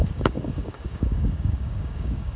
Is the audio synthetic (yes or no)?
yes